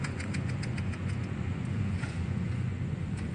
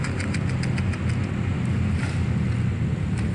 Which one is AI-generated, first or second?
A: first